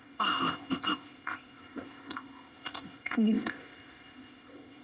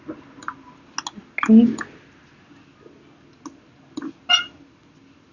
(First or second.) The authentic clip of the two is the second